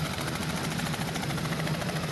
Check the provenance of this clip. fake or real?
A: fake